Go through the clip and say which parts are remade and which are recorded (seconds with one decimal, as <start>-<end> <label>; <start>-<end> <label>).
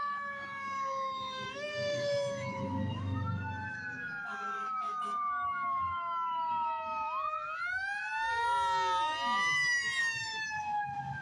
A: 0.0-8.3 remade; 8.3-10.0 recorded; 10.0-11.2 remade